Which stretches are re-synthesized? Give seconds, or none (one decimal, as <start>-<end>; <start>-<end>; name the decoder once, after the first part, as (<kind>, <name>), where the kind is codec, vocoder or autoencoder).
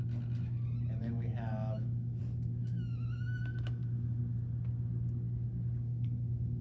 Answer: 1.0-2.2 (autoencoder, DAC-VAE); 2.6-4.2